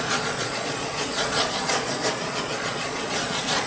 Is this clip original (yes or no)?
no